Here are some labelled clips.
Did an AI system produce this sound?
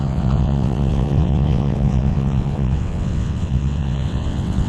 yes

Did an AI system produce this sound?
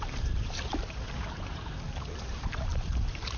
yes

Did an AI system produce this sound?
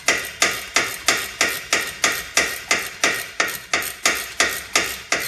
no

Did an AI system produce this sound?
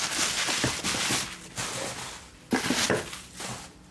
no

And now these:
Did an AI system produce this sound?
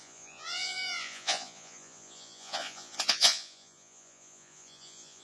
yes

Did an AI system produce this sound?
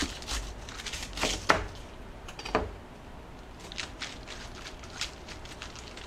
no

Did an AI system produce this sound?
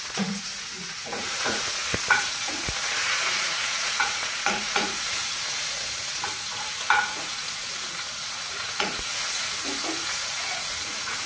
yes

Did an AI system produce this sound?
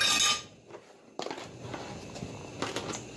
no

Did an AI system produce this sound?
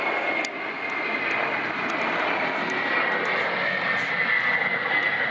no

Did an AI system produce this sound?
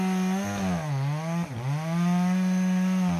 no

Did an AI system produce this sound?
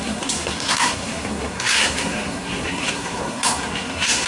yes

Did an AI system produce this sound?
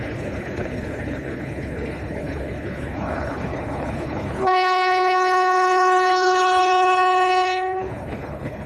yes